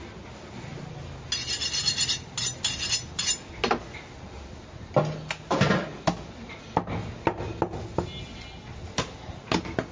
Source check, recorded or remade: recorded